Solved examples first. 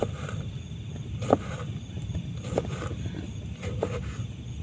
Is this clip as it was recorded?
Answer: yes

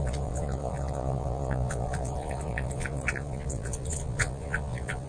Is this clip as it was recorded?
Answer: no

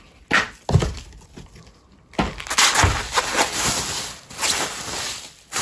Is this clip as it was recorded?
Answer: yes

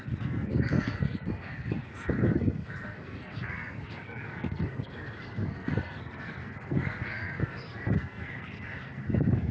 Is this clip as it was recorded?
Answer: no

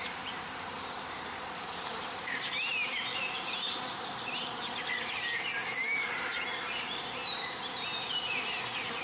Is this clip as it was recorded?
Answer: no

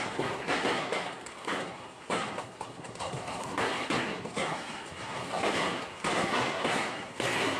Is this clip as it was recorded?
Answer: no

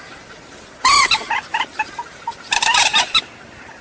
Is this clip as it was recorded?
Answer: yes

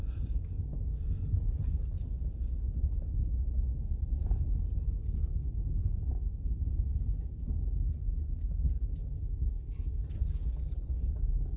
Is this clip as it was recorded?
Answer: yes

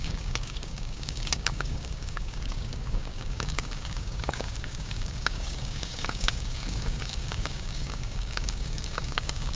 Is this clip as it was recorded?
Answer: no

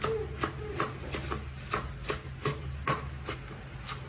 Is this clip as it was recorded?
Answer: yes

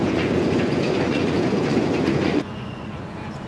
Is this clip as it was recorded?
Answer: no